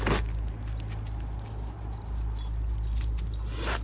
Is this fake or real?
real